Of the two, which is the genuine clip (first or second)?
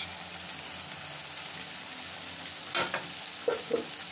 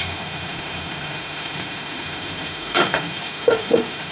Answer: first